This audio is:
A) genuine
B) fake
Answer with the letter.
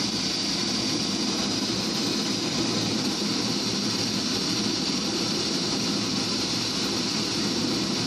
B